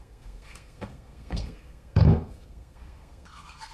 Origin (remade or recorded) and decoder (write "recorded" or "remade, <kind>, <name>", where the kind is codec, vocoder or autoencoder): remade, codec, SNAC